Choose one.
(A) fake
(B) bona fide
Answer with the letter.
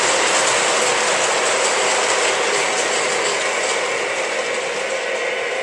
B